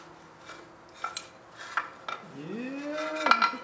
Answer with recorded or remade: recorded